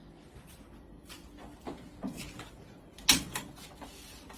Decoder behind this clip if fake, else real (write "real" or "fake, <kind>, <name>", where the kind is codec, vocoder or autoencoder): real